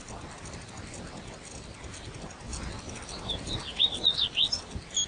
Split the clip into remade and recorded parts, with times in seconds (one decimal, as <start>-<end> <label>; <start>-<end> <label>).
0.0-5.1 recorded